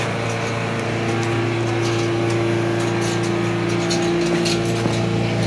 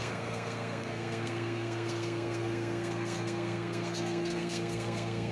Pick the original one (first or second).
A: first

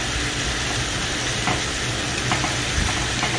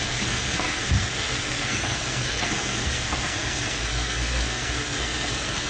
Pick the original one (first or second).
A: first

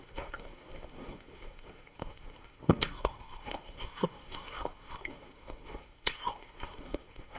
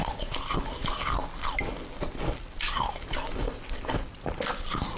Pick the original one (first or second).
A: second